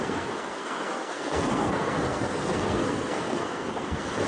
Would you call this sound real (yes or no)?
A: no